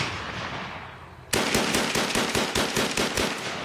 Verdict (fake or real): real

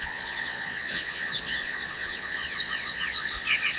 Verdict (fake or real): fake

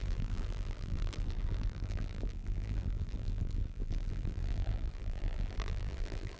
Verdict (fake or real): fake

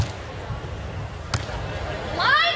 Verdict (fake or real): real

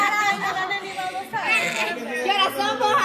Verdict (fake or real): real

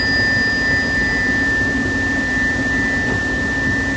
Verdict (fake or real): real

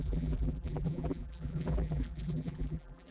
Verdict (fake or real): fake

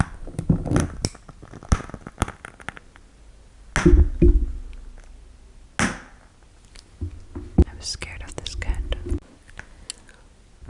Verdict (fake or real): real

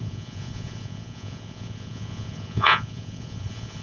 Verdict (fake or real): fake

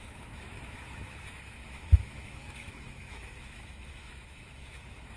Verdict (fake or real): fake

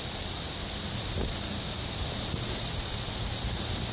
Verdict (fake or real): real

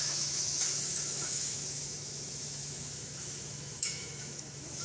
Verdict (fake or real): fake